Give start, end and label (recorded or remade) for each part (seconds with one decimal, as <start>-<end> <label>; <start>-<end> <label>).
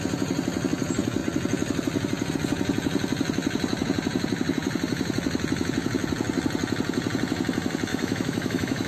0.0-7.9 recorded; 7.9-8.9 remade